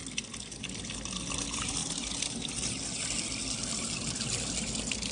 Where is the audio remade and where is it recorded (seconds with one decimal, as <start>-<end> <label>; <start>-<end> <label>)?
0.0-5.1 recorded